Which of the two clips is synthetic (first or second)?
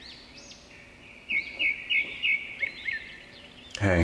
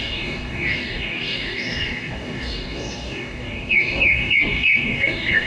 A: second